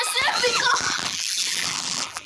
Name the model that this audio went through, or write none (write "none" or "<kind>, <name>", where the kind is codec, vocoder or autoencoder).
vocoder, BigVGAN v2